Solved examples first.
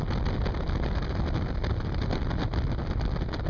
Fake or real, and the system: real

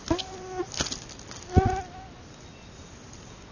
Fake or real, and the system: real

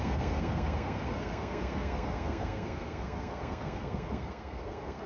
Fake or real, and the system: fake, codec, SNAC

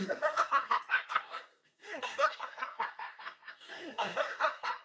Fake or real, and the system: fake, codec, SNAC